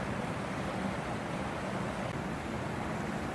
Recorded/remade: recorded